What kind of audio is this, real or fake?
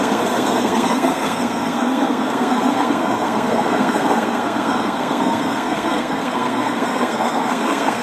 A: fake